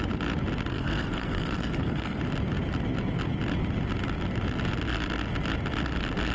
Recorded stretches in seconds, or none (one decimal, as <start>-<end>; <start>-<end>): 0.0-0.7; 2.2-6.3